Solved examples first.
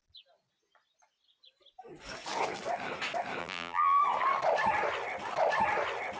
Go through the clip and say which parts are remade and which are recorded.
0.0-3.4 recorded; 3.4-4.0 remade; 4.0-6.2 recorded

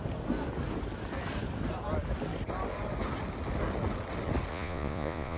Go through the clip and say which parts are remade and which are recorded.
0.0-4.5 recorded; 4.5-5.4 remade

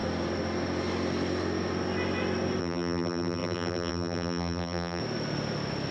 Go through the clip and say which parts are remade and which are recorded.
0.0-2.6 recorded; 2.6-5.0 remade; 5.0-5.9 recorded

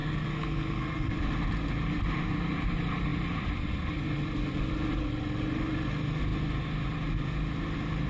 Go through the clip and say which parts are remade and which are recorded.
0.0-1.1 remade; 1.1-8.1 recorded

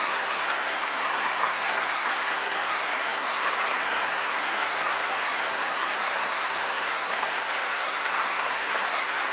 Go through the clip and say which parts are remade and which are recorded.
0.0-9.3 remade

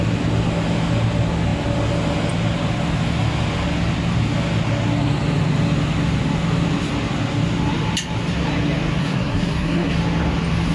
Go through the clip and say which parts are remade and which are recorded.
0.0-9.0 recorded; 9.0-9.9 remade; 9.9-10.7 recorded